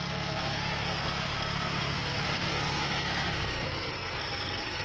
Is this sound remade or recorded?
remade